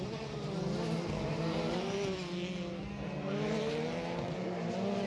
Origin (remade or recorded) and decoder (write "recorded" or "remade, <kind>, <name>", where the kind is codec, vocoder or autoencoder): recorded